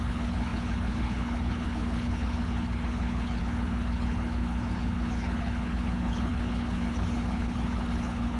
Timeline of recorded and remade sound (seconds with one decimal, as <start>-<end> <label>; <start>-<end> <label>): 0.0-8.4 remade